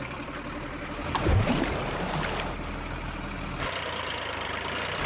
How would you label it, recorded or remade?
recorded